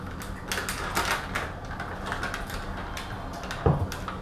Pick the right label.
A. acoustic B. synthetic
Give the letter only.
A